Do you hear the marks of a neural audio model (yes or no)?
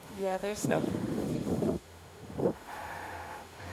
yes